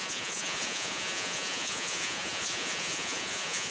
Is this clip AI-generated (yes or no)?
yes